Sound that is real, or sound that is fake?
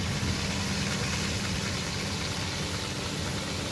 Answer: real